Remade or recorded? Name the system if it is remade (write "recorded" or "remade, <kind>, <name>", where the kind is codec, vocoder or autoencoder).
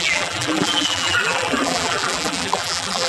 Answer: remade, vocoder, BigVGAN v2